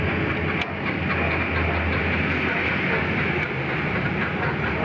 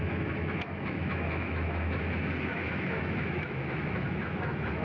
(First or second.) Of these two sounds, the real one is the first